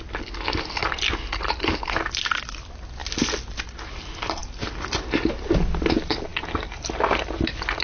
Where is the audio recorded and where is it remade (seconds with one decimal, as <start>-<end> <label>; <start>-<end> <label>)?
0.0-7.8 recorded